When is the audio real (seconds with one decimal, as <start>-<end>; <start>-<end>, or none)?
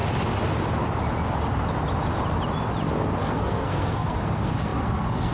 0.0-3.2